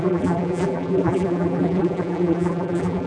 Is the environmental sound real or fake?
fake